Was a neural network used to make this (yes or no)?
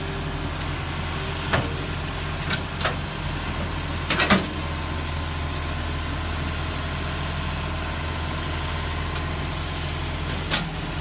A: no